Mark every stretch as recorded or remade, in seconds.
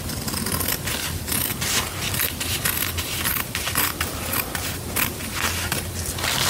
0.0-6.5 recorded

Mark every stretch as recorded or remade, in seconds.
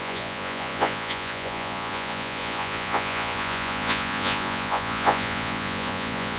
0.0-6.4 remade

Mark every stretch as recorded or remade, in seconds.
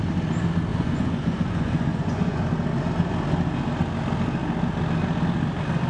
0.0-0.7 recorded; 0.7-2.4 remade; 2.4-5.9 recorded